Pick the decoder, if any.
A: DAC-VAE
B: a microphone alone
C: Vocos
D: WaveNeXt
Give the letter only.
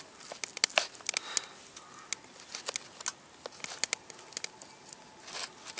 B